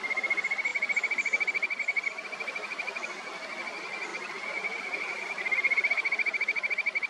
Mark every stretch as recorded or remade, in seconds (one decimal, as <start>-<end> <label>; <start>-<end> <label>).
0.0-0.7 recorded; 0.7-2.0 remade; 2.0-4.1 recorded; 4.1-5.4 remade; 5.4-7.1 recorded